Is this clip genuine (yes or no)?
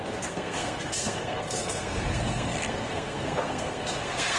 no